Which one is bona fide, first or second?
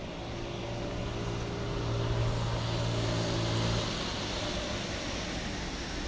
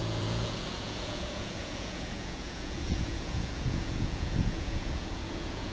first